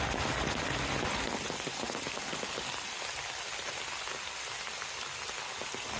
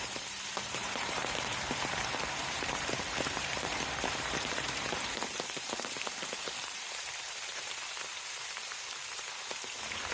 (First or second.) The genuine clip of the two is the first